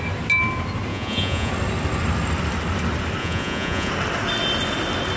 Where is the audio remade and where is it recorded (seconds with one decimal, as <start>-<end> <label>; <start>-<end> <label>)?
0.0-0.9 recorded; 0.9-1.5 remade; 1.5-3.2 recorded; 3.2-3.9 remade; 3.9-5.2 recorded